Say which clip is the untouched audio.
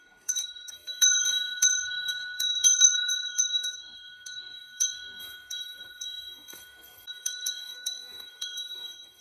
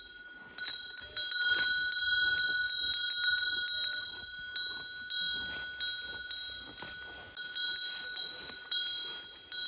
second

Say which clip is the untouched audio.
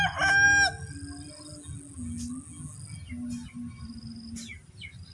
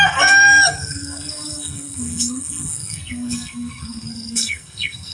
first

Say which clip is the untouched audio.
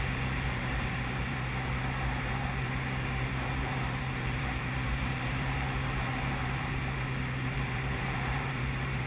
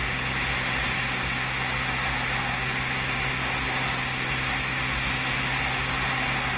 second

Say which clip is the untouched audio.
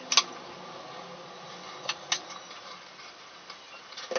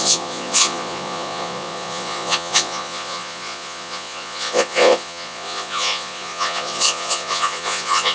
first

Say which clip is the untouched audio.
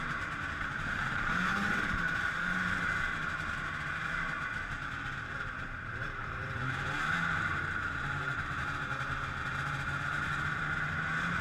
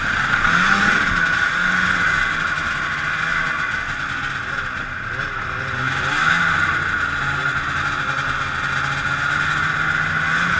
second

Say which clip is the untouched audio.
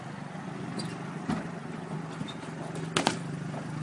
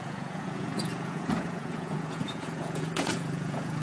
first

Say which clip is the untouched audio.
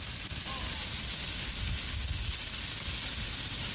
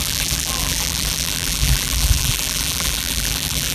first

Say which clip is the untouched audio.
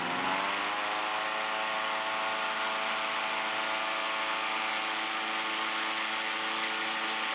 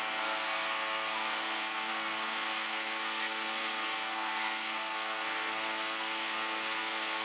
first